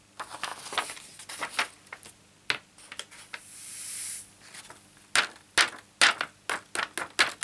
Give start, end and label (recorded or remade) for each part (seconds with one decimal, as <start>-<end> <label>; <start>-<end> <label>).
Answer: 0.0-7.4 recorded